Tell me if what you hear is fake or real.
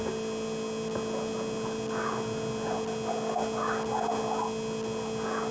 real